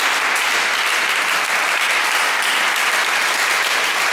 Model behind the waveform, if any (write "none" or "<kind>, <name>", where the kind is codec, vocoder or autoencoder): none